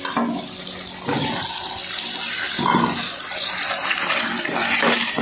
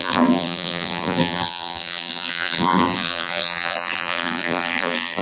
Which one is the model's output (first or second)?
second